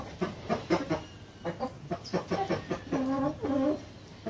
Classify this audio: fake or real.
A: real